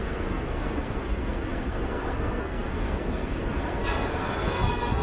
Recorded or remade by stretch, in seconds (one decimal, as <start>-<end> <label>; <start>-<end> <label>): 0.0-5.0 remade

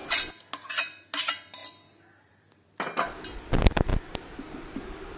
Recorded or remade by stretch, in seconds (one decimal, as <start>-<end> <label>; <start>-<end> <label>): 0.0-5.2 recorded

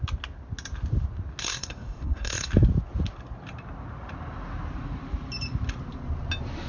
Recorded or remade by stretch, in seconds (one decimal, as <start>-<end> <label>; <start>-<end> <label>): 0.0-1.4 recorded; 1.4-2.5 remade; 2.5-6.7 recorded

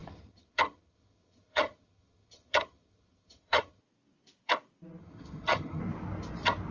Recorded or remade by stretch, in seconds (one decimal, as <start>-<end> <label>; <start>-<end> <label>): 0.0-3.8 remade; 3.8-5.0 recorded; 5.0-5.8 remade; 5.8-6.7 recorded

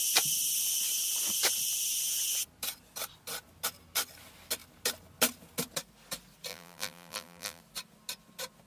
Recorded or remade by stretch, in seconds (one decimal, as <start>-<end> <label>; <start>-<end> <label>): 0.0-6.5 recorded; 6.5-7.6 remade; 7.6-8.7 recorded

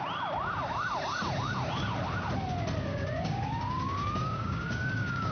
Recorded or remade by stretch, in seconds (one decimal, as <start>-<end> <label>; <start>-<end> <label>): 0.0-2.9 recorded; 2.9-5.3 remade

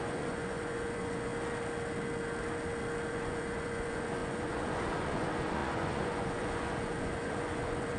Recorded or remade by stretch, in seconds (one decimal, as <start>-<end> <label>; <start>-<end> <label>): 0.0-1.3 remade; 1.3-3.1 recorded; 3.1-8.0 remade

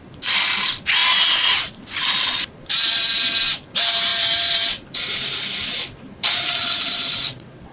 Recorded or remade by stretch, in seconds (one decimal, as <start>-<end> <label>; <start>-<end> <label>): 0.0-6.6 recorded; 6.6-7.7 remade